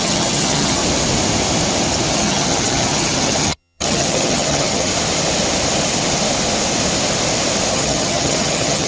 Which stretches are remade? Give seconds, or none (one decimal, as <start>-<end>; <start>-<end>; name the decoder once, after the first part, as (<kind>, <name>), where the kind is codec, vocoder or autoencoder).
0.0-0.8 (vocoder, HiFi-GAN); 2.1-4.9; 7.7-8.9